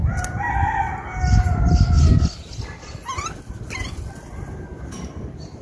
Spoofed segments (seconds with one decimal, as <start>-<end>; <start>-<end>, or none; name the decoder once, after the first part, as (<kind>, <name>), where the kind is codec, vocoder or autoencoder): none